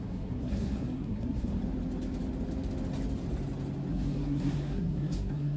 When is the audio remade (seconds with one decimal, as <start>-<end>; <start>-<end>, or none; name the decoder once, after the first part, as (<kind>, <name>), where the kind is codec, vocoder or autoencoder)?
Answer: 0.0-1.6 (codec, SNAC); 3.9-5.6